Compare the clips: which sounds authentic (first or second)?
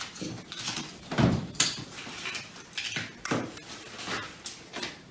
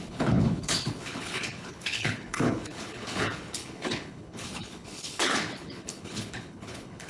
first